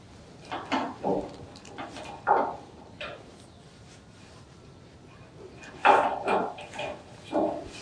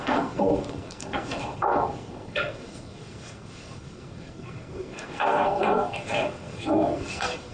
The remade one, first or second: second